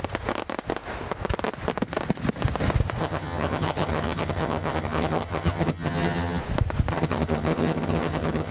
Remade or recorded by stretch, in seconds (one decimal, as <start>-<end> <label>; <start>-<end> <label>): 0.0-3.0 recorded; 3.0-6.4 remade; 6.4-6.9 recorded; 6.9-8.5 remade